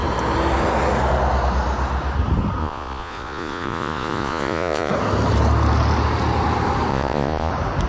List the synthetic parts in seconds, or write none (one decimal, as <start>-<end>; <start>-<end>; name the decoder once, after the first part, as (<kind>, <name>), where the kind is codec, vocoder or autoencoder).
2.6-4.9 (vocoder, Vocos); 6.9-7.5

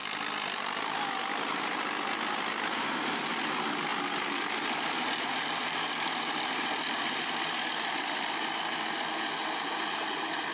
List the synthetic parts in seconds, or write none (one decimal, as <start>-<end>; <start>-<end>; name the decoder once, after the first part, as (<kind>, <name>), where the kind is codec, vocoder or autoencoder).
0.0-0.8 (vocoder, BigVGAN v2); 3.9-8.6

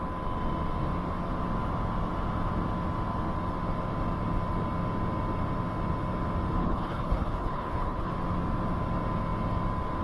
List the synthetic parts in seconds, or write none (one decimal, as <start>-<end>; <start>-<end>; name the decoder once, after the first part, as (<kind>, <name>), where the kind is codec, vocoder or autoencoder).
6.6-8.1 (codec, HILCodec)

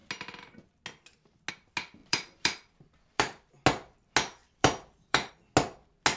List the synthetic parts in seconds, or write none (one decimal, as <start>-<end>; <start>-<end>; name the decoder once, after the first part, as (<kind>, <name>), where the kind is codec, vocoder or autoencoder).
2.0-3.5 (vocoder, BigVGAN v2); 4.4-5.3

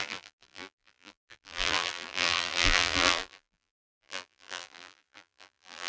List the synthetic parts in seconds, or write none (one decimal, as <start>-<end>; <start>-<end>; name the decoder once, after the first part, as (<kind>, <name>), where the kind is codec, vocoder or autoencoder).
0.0-5.9 (vocoder, BigVGAN v2)

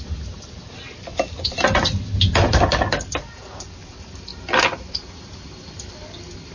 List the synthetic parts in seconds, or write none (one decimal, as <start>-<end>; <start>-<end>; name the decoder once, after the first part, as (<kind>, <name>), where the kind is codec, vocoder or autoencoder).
none

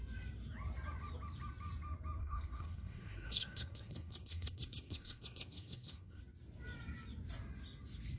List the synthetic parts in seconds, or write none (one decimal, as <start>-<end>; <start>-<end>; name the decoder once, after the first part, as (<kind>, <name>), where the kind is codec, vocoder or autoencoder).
2.2-6.2 (codec, SNAC)